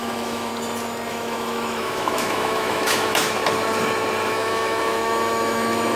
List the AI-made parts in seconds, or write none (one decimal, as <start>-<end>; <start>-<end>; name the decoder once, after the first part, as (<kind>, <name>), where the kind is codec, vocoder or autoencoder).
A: 0.0-0.5 (autoencoder, DAC-VAE); 1.1-3.4; 4.3-6.0